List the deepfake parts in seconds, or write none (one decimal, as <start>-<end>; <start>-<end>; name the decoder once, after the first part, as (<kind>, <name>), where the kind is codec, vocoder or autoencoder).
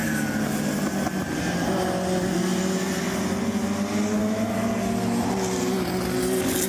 4.2-4.7 (autoencoder, DAC-VAE)